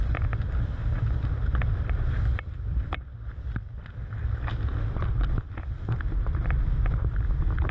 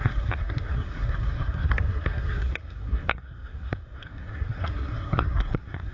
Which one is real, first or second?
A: first